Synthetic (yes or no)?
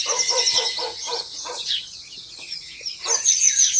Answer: yes